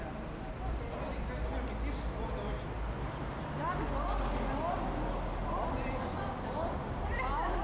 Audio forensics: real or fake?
real